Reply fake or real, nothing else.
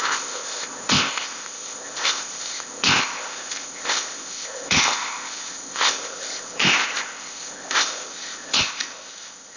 fake